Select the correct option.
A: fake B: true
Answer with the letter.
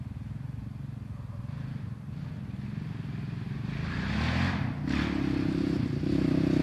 B